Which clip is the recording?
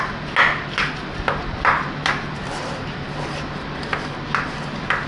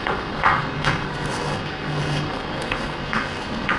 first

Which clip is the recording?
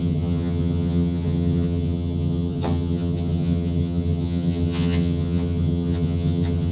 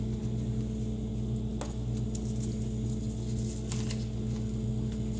second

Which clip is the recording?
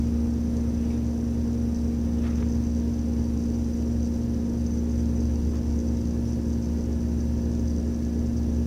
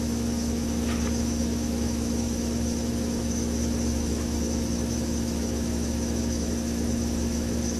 first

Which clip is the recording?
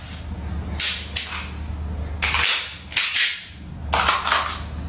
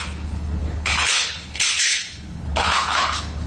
first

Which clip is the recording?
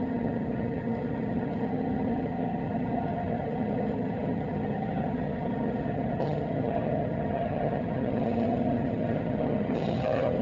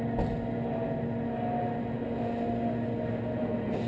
second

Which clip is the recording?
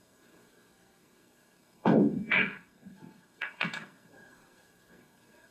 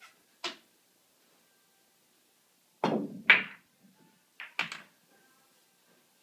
second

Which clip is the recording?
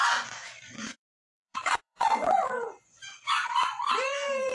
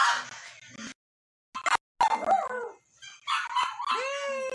second